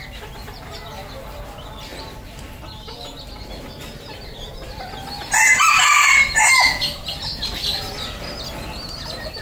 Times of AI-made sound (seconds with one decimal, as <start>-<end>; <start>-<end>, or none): none